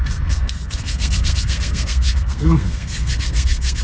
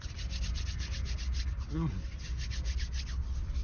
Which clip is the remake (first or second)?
first